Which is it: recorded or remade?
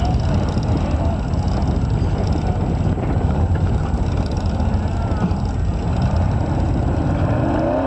recorded